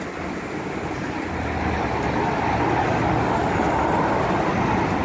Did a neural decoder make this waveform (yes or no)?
no